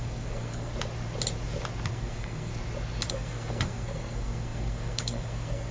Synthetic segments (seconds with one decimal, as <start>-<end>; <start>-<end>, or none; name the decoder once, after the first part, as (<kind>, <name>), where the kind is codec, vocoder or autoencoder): 0.0-0.7 (codec, SNAC); 1.9-2.5; 3.1-5.7